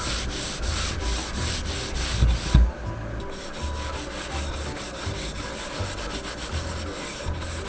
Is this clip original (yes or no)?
yes